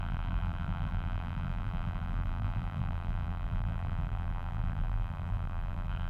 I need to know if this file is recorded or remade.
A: remade